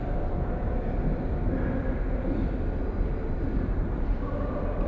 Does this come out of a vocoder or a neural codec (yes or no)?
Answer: no